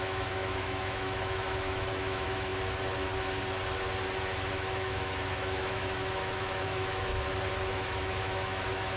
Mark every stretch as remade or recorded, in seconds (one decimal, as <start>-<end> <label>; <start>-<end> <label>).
0.0-2.5 remade; 2.5-4.5 recorded; 4.5-7.1 remade; 7.1-7.7 recorded; 7.7-9.0 remade